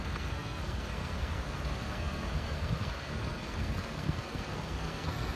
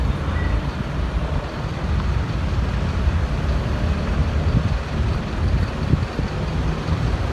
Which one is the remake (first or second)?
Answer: first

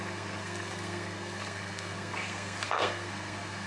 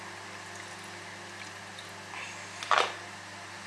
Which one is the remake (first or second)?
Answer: first